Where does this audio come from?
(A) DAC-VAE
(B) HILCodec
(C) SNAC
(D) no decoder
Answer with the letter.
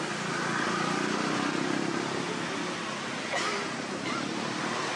D